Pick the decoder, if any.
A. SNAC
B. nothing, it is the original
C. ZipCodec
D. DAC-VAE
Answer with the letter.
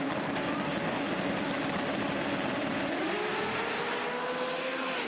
B